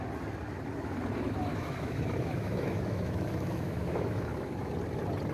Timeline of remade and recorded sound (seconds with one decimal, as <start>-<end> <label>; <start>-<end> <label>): 0.0-1.5 recorded; 1.5-4.7 remade; 4.7-5.3 recorded